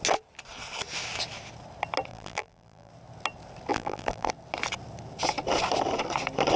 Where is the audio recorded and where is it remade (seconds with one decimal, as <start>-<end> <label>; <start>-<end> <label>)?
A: 0.0-2.1 recorded; 2.1-2.9 remade; 2.9-3.7 recorded; 3.7-4.3 remade; 4.3-6.6 recorded